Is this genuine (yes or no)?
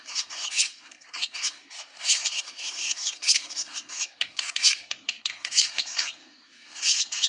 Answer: no